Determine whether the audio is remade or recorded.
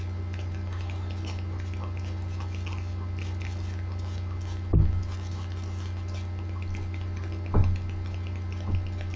recorded